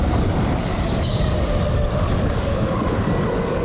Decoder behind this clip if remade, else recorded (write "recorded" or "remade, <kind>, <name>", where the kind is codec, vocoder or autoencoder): remade, codec, DAC